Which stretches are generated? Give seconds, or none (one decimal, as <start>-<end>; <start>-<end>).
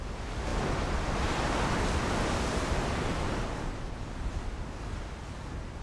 none